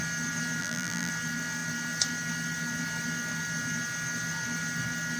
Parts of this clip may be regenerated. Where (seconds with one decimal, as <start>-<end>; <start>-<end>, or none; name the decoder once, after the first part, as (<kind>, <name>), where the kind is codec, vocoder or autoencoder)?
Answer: 0.6-1.1 (vocoder, BigVGAN v2)

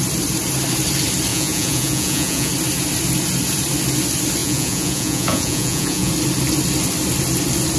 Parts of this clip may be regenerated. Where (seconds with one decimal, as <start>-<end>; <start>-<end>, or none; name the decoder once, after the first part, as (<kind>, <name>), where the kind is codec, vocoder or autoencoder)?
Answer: 1.3-2.5 (vocoder, Vocos); 4.4-6.1

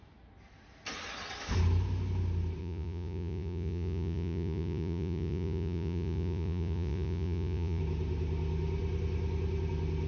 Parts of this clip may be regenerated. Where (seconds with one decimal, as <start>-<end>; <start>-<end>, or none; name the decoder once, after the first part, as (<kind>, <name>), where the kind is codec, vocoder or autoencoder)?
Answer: 2.6-7.8 (vocoder, Vocos)

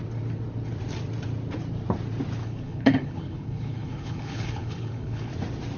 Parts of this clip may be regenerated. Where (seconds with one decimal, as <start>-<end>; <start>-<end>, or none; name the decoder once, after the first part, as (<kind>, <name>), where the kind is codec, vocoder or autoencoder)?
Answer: 2.4-5.3 (codec, HILCodec)